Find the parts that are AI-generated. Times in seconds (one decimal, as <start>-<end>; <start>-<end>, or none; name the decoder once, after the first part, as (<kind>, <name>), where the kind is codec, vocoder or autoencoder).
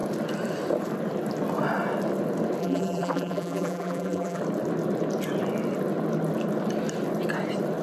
2.6-4.4 (vocoder, BigVGAN v2)